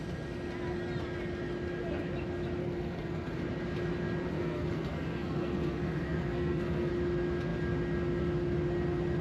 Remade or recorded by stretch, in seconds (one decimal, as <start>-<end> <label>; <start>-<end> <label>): 0.0-2.6 recorded; 2.6-3.4 remade; 3.4-4.3 recorded; 4.3-6.9 remade; 6.9-9.2 recorded